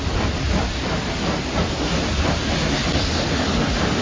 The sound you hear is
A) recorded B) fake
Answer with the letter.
A